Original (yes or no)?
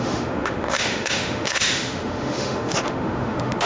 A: no